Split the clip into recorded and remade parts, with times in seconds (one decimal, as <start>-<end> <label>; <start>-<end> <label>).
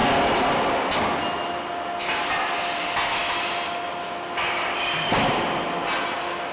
0.0-6.5 recorded